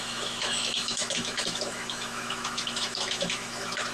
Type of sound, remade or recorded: remade